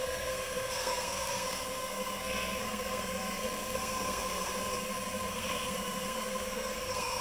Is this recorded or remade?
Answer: remade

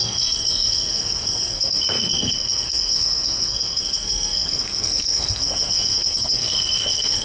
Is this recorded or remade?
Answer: remade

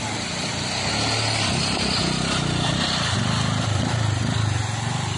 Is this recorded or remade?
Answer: recorded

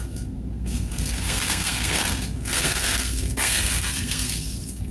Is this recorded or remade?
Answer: remade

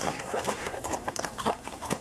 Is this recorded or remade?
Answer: remade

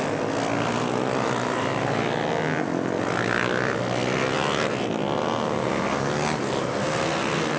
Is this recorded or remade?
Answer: recorded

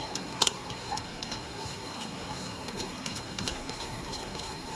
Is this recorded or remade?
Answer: remade